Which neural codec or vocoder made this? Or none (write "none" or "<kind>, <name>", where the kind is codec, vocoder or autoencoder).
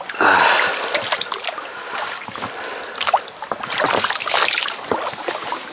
none